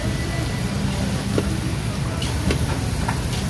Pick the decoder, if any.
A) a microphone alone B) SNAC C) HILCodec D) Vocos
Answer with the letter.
A